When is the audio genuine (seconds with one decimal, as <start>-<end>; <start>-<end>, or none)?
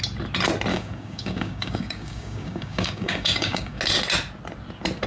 0.0-0.7; 3.8-5.1